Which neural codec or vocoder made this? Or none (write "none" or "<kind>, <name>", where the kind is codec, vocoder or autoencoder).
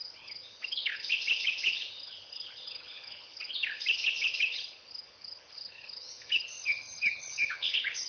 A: codec, HILCodec